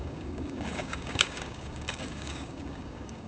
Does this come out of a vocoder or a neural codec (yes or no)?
yes